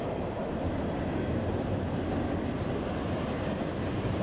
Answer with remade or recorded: recorded